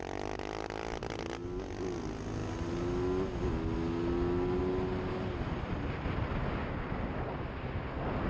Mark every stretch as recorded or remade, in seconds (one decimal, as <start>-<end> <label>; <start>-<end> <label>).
0.0-8.3 recorded